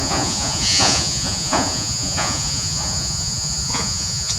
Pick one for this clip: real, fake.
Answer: fake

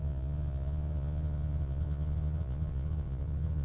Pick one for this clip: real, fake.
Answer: fake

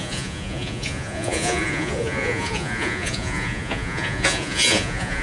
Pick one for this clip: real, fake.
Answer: fake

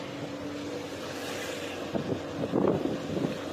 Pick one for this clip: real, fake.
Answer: real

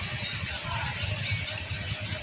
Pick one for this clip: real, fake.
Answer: real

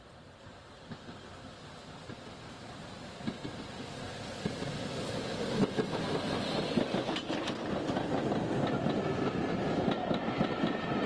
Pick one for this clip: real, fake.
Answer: real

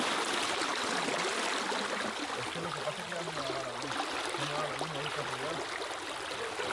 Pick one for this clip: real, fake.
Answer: real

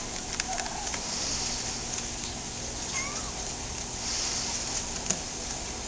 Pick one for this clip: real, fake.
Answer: real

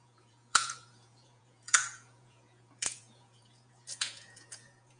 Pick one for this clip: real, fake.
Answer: fake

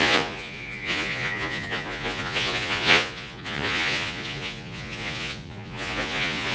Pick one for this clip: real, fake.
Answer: fake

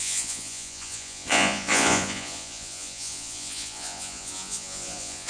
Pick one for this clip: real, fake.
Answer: fake